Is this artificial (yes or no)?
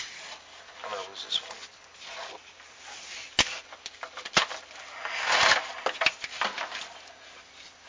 no